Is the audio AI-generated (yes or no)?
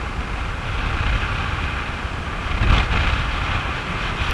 no